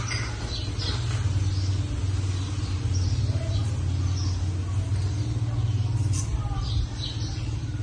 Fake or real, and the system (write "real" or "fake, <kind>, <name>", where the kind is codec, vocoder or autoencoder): real